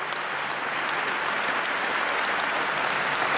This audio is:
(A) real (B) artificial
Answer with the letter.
A